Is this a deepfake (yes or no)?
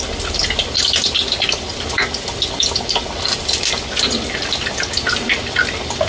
no